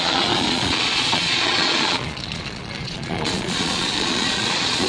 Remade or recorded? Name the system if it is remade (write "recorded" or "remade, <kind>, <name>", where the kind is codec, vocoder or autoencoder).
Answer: remade, vocoder, Vocos